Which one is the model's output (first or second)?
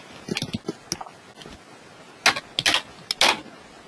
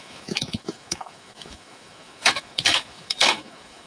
second